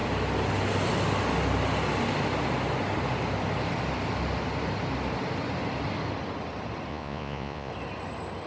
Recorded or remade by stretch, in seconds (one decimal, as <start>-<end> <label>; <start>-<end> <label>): 0.0-6.9 recorded; 6.9-7.7 remade; 7.7-8.5 recorded